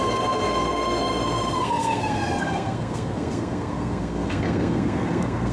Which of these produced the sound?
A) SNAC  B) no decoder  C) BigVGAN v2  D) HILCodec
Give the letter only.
A